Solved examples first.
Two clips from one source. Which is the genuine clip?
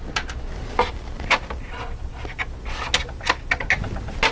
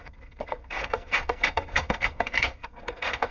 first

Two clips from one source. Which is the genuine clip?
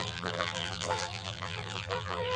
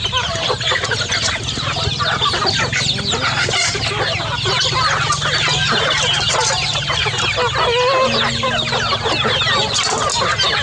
second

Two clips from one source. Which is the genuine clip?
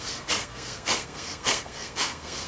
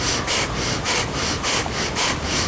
second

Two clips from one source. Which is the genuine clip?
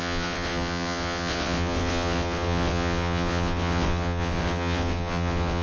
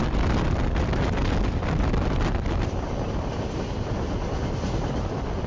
second